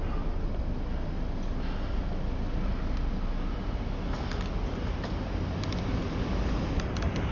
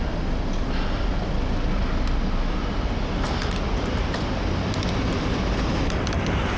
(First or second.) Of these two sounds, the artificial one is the second